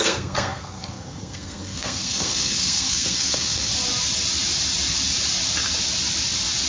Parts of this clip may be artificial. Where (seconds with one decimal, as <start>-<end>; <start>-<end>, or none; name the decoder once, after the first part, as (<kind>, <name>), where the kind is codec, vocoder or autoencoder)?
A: 0.0-3.7 (codec, SNAC)